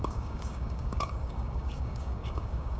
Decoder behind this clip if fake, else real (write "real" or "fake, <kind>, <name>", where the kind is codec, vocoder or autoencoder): fake, codec, DAC